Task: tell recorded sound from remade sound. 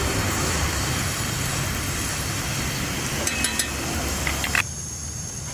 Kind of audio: remade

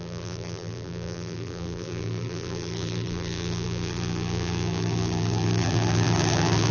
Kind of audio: remade